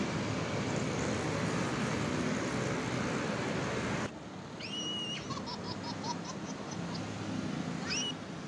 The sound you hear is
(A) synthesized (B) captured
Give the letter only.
B